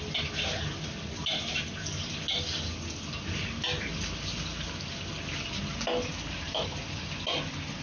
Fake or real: real